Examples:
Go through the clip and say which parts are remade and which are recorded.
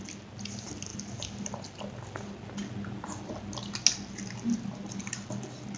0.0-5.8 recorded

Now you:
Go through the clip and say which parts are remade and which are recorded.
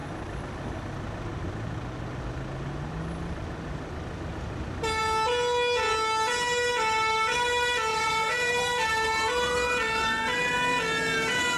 0.0-7.9 recorded; 7.9-8.6 remade; 8.6-11.6 recorded